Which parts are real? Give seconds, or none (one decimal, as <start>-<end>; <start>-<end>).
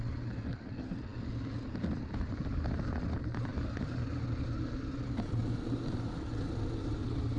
0.0-7.4